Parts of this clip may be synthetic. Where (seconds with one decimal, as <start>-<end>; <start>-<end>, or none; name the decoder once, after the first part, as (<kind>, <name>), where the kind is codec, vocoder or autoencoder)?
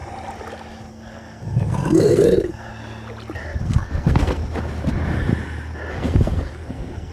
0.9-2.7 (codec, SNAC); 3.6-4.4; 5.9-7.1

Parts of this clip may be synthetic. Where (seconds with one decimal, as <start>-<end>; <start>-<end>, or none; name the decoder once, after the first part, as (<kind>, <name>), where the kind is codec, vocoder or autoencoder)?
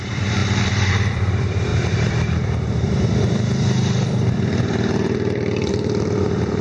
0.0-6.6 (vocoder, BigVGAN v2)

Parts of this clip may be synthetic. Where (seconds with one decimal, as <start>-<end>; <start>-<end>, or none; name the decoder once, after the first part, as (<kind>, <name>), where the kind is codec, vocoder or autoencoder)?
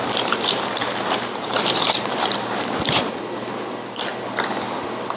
0.0-3.1 (vocoder, BigVGAN v2)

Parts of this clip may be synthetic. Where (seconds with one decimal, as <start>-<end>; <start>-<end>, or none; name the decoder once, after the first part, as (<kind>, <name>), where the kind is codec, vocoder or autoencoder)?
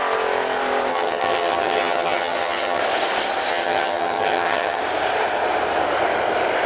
0.9-2.8 (vocoder, HiFi-GAN); 3.5-4.8